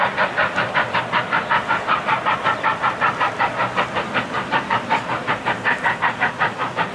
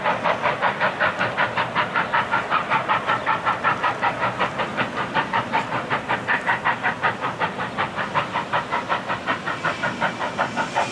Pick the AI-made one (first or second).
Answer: second